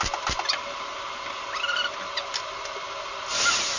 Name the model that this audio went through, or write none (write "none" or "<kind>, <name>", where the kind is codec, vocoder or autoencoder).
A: none